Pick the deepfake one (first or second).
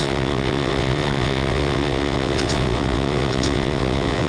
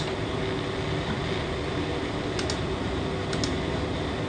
first